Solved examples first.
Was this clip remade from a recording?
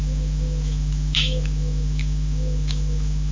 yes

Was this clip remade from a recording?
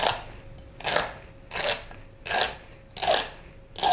no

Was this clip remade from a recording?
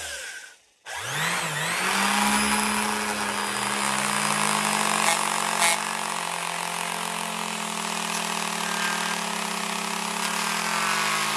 no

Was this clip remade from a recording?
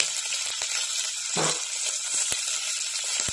no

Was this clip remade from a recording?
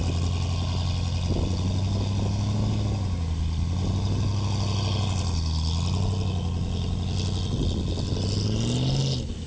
no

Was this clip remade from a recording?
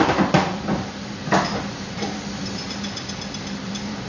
yes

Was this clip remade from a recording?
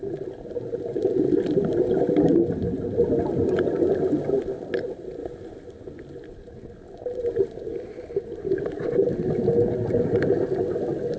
no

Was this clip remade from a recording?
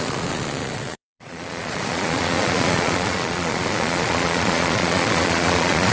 yes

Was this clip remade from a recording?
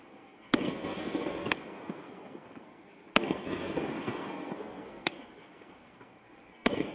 yes